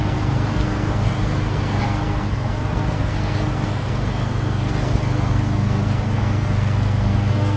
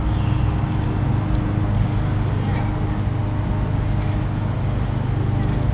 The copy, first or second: first